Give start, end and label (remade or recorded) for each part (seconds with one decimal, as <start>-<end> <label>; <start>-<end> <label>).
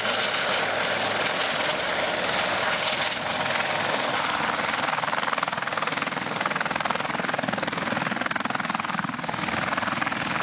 0.0-10.4 recorded